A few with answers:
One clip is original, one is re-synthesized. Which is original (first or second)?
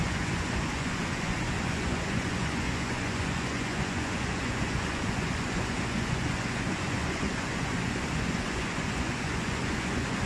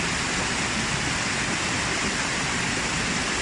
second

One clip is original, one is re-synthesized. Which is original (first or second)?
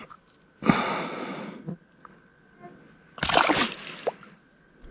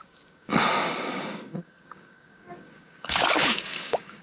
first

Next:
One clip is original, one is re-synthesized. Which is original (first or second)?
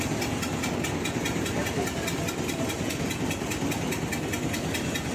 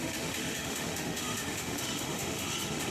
first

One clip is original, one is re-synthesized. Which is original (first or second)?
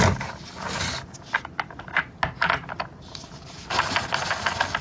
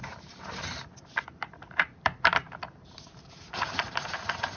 first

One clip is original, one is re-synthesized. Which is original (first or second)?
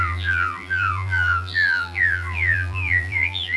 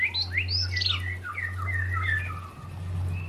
second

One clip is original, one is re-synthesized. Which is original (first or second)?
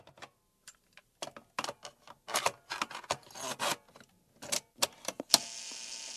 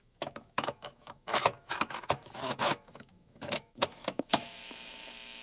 first